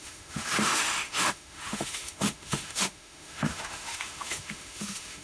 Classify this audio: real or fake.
fake